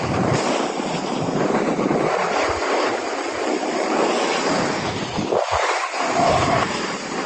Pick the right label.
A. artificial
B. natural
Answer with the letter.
A